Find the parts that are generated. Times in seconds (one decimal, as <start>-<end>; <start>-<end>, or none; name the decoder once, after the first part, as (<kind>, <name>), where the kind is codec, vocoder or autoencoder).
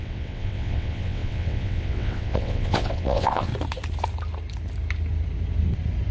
0.0-3.5 (vocoder, WaveNeXt)